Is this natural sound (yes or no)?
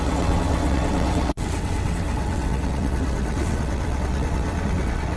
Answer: no